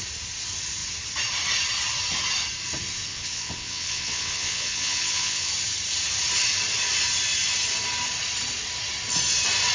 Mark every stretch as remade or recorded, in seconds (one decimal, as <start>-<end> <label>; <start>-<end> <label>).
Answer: 0.0-3.1 recorded; 3.1-5.5 remade; 5.5-9.7 recorded